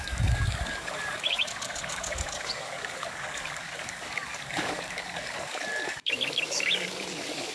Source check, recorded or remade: remade